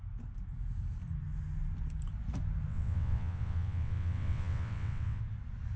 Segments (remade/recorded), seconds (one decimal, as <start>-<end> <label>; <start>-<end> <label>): 0.0-2.7 recorded; 2.7-5.2 remade; 5.2-5.8 recorded